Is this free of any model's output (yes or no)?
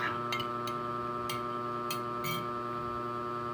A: yes